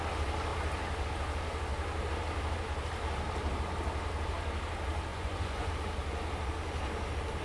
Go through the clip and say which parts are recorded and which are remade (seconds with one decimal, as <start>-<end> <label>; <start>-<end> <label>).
0.0-5.1 recorded; 5.1-5.7 remade; 5.7-7.4 recorded